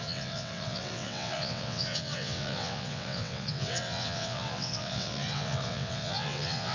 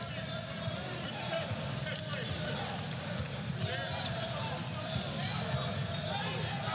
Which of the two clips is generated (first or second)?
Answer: first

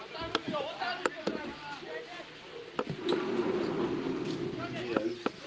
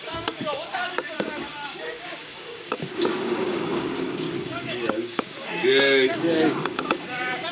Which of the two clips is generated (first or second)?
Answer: second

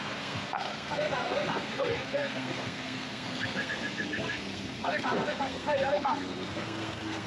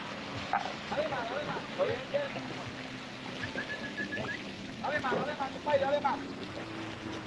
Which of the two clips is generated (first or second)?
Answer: first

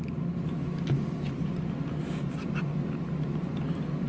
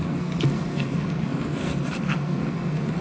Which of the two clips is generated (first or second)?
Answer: second